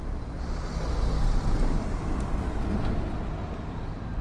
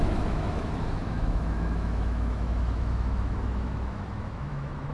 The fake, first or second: second